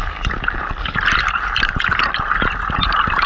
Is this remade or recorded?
recorded